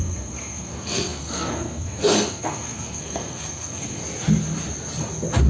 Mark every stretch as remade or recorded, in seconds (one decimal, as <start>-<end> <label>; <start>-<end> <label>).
0.0-4.0 remade; 4.0-5.5 recorded